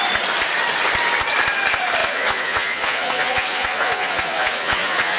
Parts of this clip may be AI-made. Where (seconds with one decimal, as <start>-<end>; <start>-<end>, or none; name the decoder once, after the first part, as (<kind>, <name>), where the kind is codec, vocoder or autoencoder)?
2.0-5.2 (vocoder, Vocos)